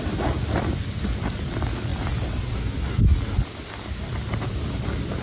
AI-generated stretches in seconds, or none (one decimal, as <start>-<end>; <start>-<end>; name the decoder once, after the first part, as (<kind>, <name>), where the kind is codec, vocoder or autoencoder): none